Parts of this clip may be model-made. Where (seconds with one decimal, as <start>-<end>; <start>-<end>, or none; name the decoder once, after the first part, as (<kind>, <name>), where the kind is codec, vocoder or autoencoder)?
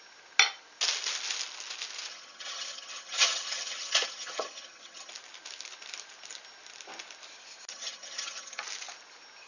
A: 2.1-5.1 (vocoder, HiFi-GAN); 7.7-8.6